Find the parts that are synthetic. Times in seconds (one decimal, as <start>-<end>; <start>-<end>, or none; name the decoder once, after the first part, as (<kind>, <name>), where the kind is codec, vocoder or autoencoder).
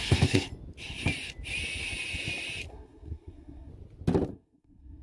0.0-0.5 (codec, SNAC); 2.7-3.7; 4.3-5.0